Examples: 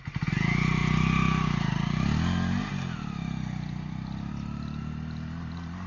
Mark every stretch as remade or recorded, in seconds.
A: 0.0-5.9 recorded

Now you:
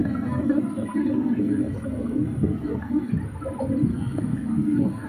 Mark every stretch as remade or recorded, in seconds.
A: 0.0-3.1 remade; 3.1-3.9 recorded; 3.9-5.1 remade